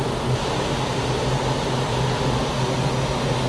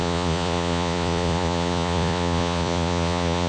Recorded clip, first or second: first